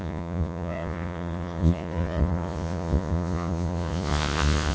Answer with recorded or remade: remade